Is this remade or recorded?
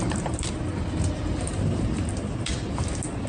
remade